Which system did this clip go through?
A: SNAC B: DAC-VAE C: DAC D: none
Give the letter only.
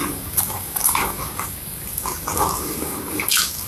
C